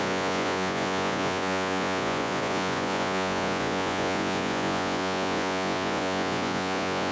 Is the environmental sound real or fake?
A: fake